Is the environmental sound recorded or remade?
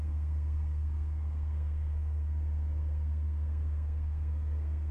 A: remade